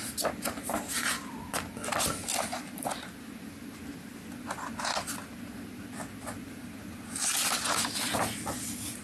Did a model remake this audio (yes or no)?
no